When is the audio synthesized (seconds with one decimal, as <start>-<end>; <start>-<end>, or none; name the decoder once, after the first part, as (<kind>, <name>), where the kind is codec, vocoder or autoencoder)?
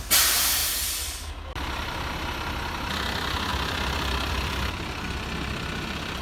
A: none